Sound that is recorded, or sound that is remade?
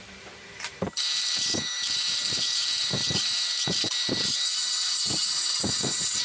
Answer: remade